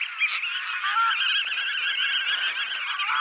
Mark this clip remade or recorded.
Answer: recorded